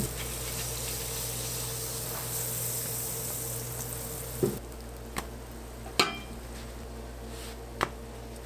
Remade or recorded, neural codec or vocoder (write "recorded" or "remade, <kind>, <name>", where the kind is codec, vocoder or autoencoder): recorded